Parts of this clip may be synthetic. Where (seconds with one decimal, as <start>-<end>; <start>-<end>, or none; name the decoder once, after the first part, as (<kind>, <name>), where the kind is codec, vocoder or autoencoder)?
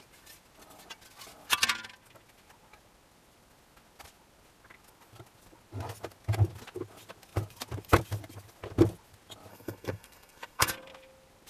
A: 9.5-10.7 (codec, SNAC)